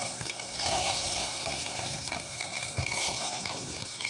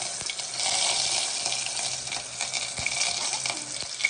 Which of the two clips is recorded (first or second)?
second